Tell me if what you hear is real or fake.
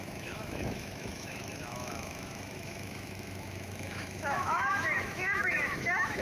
fake